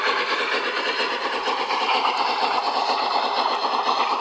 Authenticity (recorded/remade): remade